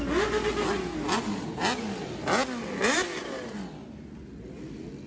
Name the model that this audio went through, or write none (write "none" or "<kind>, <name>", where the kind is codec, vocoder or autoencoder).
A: none